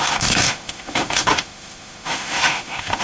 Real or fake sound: fake